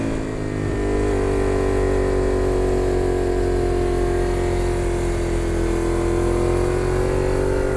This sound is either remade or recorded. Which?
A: recorded